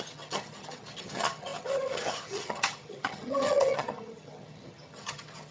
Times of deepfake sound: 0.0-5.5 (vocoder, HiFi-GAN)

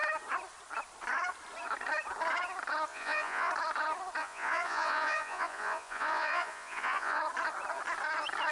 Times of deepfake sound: 2.9-3.5 (vocoder, Vocos); 4.2-7.2

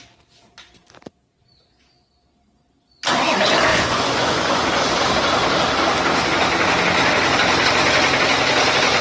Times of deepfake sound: 3.7-4.9 (vocoder, Vocos)

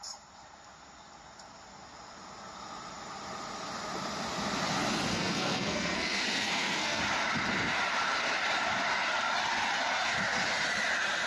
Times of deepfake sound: 5.1-7.0 (codec, SNAC)

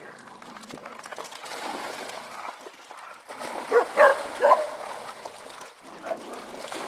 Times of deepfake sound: 0.8-2.3 (vocoder, Vocos); 4.1-5.8

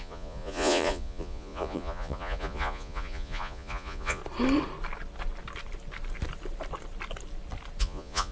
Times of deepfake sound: 0.0-4.2 (vocoder, Vocos); 7.8-8.3

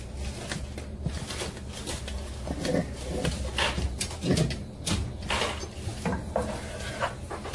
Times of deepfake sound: none